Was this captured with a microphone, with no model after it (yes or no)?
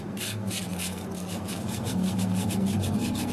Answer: no